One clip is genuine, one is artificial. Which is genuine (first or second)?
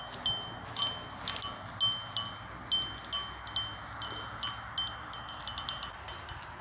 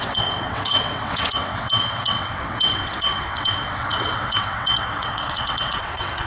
first